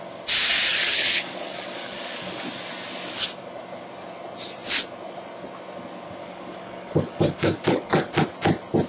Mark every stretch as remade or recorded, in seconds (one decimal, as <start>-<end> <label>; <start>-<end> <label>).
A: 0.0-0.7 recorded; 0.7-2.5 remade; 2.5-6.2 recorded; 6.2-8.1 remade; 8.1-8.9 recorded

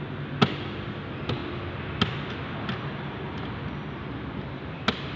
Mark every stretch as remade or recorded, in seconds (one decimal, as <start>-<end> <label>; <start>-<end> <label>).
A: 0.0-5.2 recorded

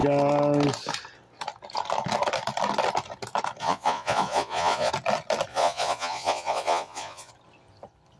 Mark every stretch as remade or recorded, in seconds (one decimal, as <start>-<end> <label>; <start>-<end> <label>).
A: 0.0-3.6 recorded; 3.6-4.9 remade; 4.9-5.5 recorded; 5.5-7.3 remade; 7.3-8.2 recorded

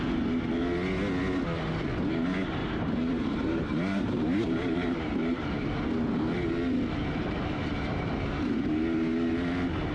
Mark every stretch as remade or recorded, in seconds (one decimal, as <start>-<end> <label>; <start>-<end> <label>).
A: 0.0-2.6 recorded; 2.6-5.9 remade; 5.9-7.7 recorded; 7.7-8.7 remade; 8.7-9.9 recorded

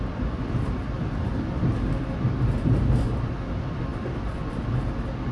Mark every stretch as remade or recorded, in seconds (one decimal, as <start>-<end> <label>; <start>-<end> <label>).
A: 0.0-5.3 recorded

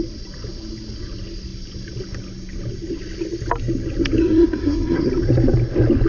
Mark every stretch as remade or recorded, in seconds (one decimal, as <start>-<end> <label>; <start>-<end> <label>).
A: 0.0-4.2 recorded; 4.2-5.1 remade; 5.1-6.1 recorded

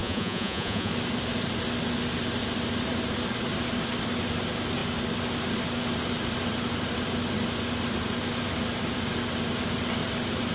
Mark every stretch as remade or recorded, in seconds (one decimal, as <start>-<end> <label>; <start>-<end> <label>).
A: 0.0-0.9 remade; 0.9-10.5 recorded